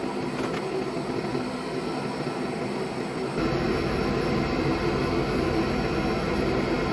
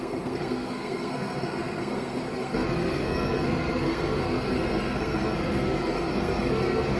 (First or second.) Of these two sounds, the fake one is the second